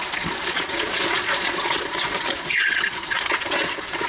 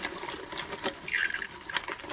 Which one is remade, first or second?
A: first